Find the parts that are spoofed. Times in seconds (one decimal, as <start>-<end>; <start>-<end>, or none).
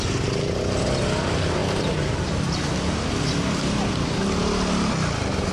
none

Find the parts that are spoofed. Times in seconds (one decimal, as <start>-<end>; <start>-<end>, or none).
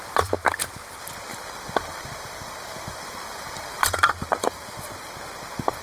1.3-4.8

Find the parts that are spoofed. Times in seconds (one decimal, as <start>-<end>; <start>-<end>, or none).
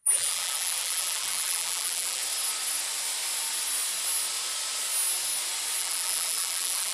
0.0-2.2; 5.8-6.9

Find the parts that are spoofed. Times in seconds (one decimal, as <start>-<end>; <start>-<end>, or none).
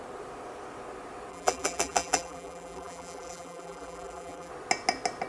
1.3-4.5